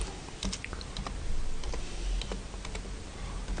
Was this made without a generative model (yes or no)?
yes